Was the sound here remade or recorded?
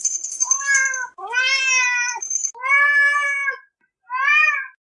recorded